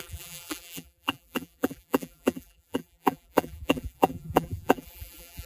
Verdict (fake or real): fake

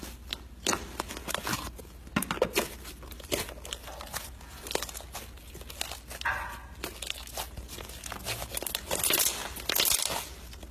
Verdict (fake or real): real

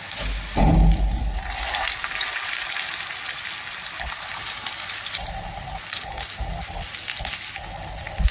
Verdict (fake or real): real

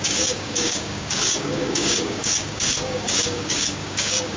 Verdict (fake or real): fake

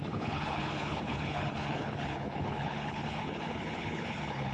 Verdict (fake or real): fake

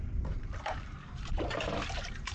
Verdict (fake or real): fake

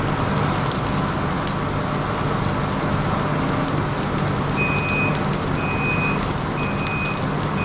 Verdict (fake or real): real